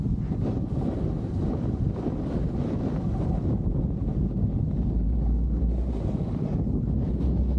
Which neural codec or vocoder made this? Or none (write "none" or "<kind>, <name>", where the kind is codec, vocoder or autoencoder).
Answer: none